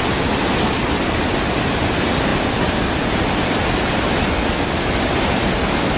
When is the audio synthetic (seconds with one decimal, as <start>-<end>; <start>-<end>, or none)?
none